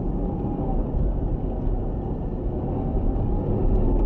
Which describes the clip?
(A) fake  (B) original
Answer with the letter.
B